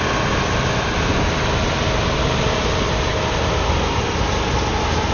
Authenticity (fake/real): real